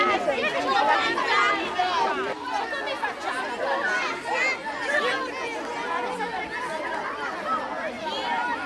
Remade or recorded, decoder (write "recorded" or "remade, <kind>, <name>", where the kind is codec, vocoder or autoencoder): recorded